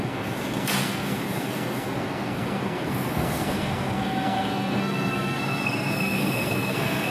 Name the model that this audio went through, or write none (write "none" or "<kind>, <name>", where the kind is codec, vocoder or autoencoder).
codec, SNAC